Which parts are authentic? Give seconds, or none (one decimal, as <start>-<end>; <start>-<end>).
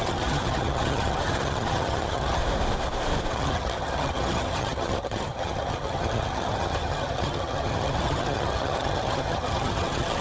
2.4-3.3